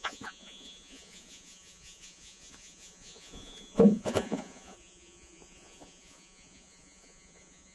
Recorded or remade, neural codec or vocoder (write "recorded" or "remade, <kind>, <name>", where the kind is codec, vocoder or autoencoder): remade, vocoder, Vocos